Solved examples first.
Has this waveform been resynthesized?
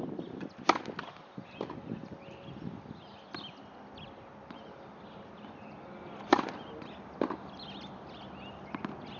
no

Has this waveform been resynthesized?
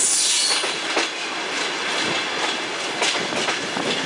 no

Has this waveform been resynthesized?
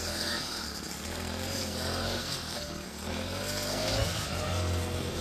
yes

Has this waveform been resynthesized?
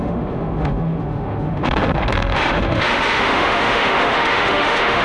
yes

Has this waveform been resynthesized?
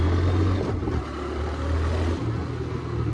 no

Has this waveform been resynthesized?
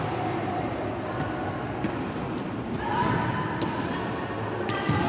no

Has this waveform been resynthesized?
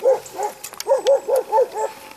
no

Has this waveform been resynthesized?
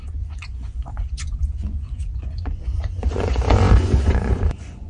yes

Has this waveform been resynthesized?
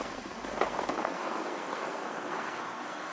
yes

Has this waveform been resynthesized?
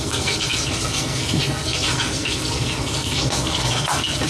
yes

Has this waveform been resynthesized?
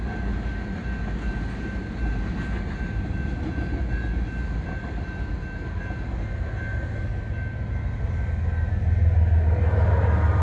no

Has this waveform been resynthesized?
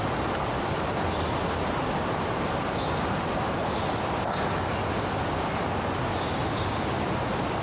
no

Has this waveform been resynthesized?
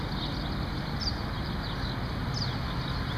no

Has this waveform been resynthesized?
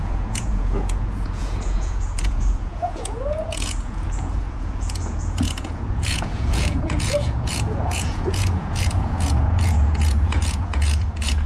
yes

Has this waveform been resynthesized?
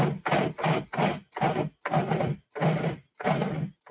no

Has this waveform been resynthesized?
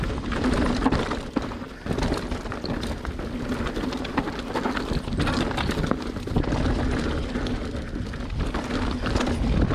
no